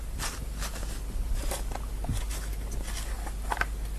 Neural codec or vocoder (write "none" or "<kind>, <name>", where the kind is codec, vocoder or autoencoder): none